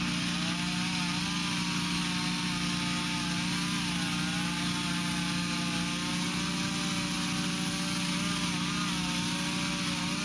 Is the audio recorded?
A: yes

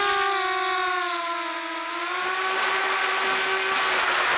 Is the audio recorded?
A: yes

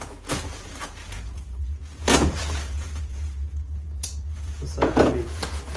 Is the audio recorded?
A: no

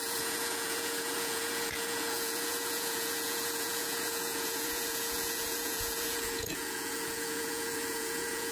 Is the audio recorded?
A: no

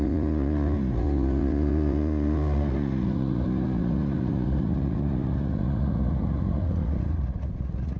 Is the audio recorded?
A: no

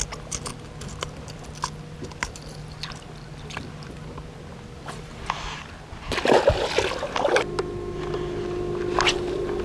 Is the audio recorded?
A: yes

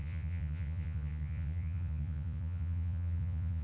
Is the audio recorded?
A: no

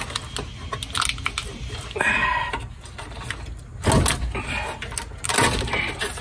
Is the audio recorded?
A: yes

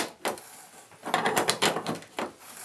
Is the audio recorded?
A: yes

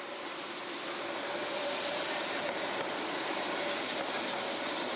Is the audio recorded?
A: yes